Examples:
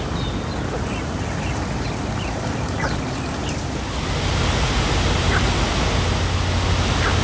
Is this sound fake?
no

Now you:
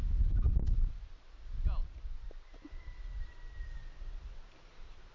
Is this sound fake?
no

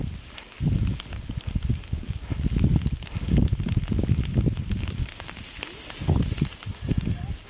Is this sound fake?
no